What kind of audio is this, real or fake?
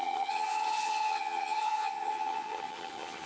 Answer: fake